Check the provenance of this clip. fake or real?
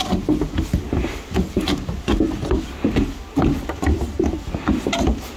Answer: real